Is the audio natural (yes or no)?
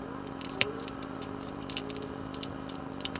no